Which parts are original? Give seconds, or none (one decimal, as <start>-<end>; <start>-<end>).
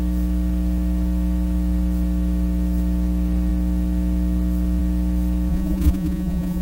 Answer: 0.0-5.5